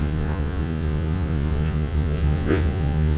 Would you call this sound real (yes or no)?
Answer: no